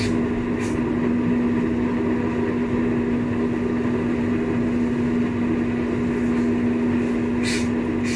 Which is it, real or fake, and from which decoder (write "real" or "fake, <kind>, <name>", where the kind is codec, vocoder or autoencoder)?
real